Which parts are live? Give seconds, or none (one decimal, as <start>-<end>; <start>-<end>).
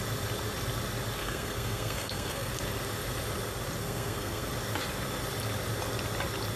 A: 0.0-1.2; 2.5-3.8; 4.5-6.6